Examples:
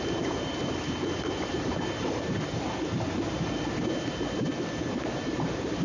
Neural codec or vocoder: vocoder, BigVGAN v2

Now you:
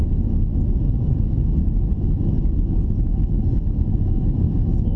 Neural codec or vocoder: none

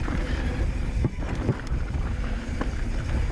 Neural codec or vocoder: none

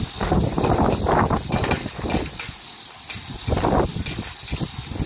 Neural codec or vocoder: none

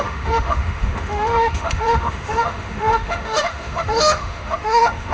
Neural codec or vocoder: autoencoder, DAC-VAE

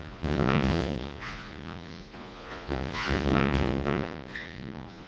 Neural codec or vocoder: vocoder, Vocos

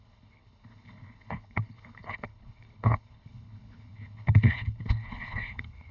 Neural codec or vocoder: codec, HILCodec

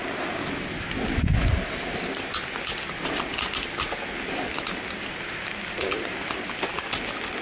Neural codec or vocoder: none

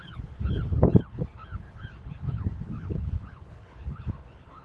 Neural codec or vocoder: codec, HILCodec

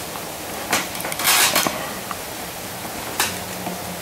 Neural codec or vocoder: none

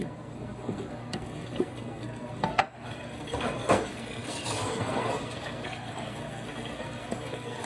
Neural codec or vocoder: codec, SNAC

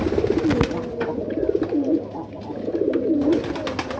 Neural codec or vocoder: none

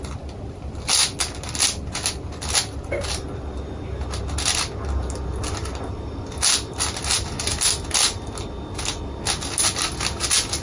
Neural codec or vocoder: none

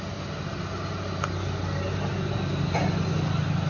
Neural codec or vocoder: none